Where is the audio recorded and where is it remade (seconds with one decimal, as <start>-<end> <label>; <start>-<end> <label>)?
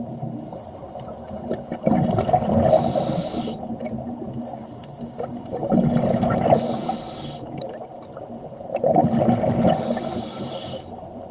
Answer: 0.0-4.8 recorded; 4.8-5.7 remade; 5.7-11.3 recorded